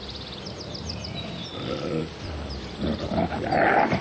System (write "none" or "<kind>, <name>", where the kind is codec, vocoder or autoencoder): none